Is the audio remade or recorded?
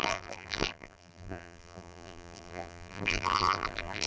remade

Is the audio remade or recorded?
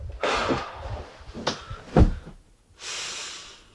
recorded